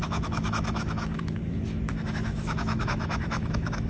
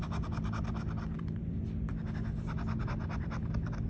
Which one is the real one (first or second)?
second